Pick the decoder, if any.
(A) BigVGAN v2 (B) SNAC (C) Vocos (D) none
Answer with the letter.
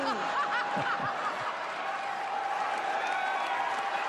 D